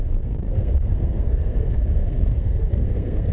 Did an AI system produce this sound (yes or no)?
yes